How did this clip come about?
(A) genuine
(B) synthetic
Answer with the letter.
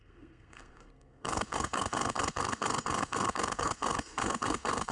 B